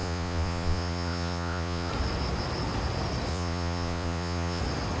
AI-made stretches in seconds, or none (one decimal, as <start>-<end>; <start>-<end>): 0.0-1.9; 3.3-4.6